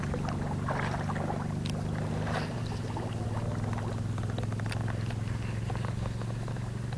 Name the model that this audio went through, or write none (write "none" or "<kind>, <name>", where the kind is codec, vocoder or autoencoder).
none